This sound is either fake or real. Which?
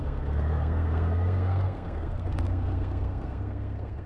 fake